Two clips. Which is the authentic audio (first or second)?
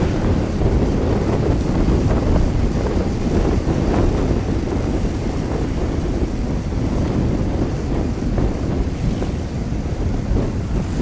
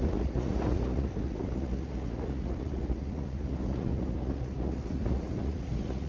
first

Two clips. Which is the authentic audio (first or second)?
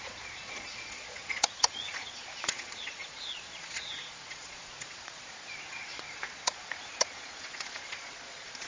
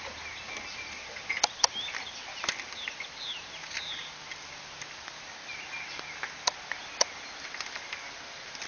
second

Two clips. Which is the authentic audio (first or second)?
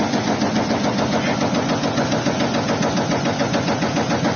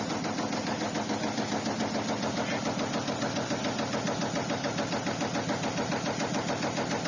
second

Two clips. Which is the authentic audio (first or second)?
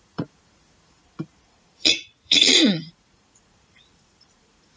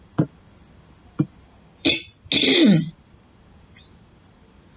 second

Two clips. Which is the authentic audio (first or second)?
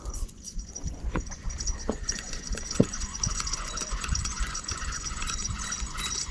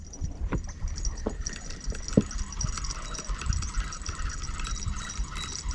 second